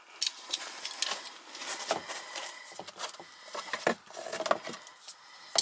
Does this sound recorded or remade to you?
recorded